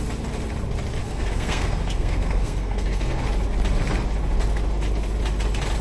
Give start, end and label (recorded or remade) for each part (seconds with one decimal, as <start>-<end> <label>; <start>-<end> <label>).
0.0-1.0 recorded; 1.0-3.2 remade; 3.2-5.8 recorded